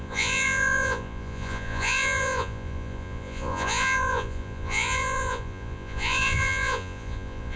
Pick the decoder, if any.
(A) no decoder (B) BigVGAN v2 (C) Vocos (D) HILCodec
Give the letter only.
C